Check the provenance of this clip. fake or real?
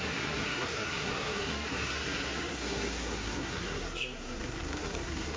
fake